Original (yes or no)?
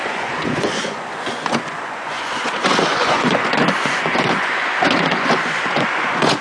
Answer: no